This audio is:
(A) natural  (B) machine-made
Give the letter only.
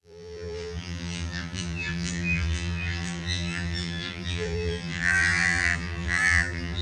B